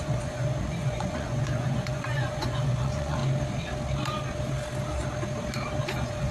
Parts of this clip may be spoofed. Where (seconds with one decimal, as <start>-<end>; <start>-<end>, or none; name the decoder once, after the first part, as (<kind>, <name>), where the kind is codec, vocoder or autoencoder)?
0.0-3.2 (vocoder, Vocos); 5.8-6.3